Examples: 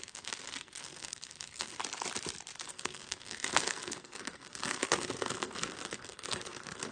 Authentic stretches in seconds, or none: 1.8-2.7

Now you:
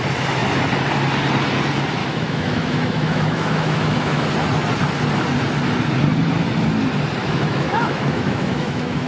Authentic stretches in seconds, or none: 0.0-2.0; 4.3-7.2